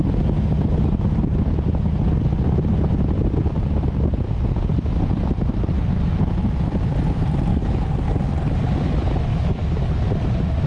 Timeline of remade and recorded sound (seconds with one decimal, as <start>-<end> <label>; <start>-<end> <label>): 0.0-7.5 recorded; 7.5-8.2 remade; 8.2-9.3 recorded; 9.3-10.0 remade; 10.0-10.7 recorded